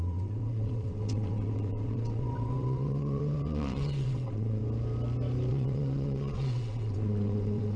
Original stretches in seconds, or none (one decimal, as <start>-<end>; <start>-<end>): 4.6-5.5